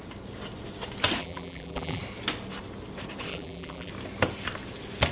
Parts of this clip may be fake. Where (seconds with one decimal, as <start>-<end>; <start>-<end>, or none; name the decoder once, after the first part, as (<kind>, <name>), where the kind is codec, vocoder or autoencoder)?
1.2-2.0 (vocoder, BigVGAN v2); 3.3-3.9

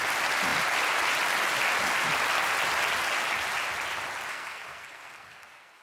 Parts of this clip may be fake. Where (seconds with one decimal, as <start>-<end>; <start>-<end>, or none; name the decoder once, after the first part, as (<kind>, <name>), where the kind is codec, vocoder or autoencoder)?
4.3-5.8 (codec, SNAC)

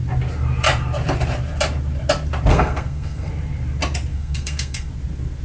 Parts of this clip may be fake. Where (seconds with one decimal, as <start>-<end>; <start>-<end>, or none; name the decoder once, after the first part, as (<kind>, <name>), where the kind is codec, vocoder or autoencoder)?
2.5-3.3 (codec, SNAC); 4.1-4.9

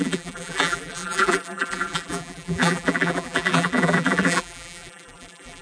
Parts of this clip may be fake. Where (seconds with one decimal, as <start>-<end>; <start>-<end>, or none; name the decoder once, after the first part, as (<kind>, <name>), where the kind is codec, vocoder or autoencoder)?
0.0-5.6 (vocoder, BigVGAN v2)